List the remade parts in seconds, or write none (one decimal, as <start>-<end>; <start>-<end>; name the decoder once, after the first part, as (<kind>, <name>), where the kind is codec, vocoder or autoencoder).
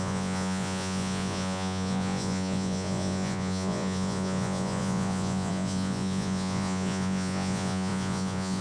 0.0-8.6 (vocoder, Vocos)